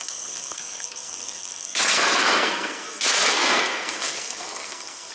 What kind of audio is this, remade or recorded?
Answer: remade